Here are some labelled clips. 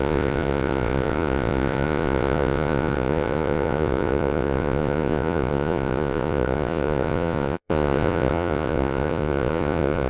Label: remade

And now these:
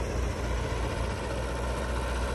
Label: recorded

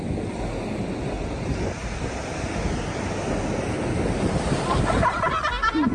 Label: recorded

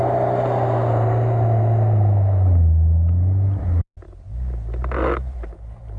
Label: recorded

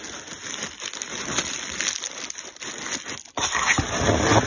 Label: recorded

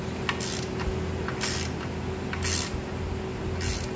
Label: recorded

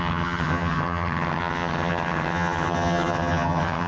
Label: remade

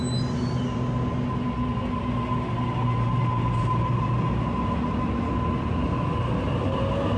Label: recorded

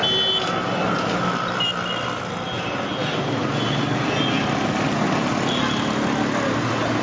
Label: recorded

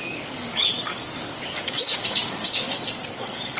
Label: remade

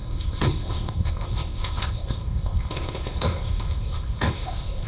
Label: remade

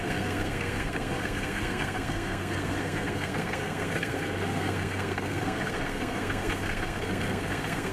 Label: remade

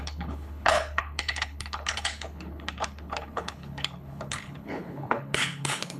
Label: remade